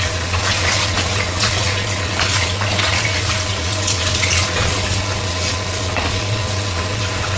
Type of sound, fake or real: fake